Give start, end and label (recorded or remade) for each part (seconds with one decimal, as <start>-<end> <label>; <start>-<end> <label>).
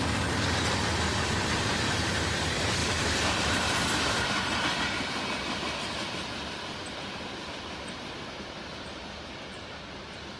0.0-1.1 recorded; 1.1-1.7 remade; 1.7-2.8 recorded; 2.8-4.6 remade; 4.6-10.4 recorded